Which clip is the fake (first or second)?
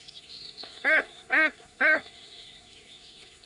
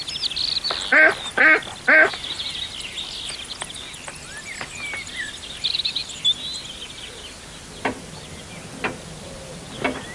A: first